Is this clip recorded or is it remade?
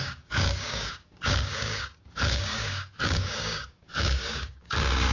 remade